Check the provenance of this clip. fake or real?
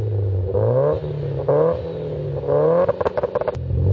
real